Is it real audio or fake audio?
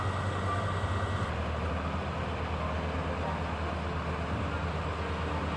real